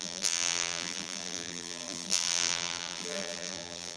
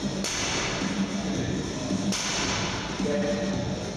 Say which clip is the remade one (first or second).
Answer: first